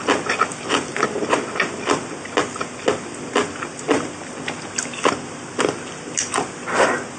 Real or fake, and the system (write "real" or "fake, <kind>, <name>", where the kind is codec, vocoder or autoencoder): real